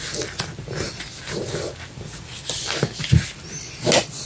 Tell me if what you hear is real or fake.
real